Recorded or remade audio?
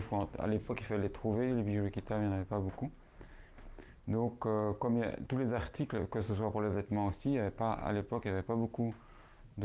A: recorded